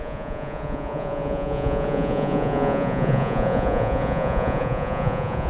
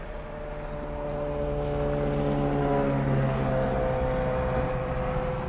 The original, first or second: second